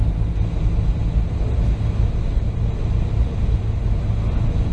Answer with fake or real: real